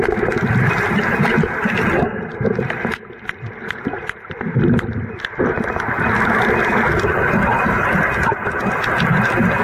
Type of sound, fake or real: real